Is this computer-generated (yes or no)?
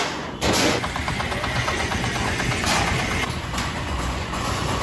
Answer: yes